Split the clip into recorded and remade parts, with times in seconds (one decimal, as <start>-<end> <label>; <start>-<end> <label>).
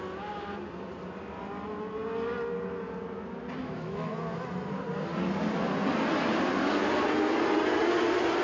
0.0-3.6 recorded; 3.6-4.1 remade; 4.1-8.4 recorded